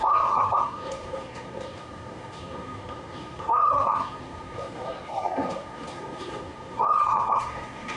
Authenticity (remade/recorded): remade